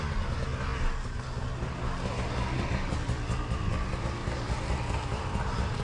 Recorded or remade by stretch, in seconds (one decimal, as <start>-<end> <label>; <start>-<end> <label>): 0.0-5.8 recorded